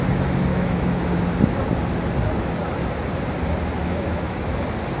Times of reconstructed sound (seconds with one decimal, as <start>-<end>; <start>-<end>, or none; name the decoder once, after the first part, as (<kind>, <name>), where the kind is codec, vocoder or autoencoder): 0.5-1.0 (autoencoder, DAC-VAE); 3.8-4.6